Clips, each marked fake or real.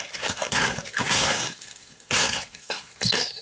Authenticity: fake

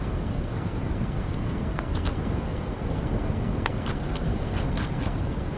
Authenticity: fake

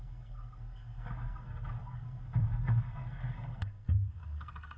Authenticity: fake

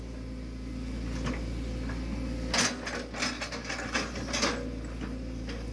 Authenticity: real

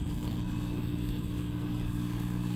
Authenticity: fake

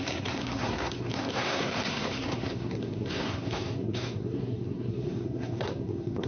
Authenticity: fake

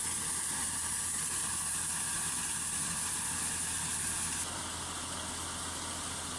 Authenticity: real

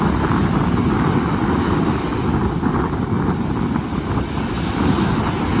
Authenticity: real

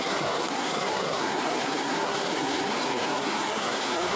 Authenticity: fake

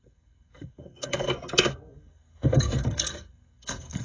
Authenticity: fake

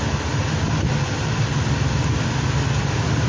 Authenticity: real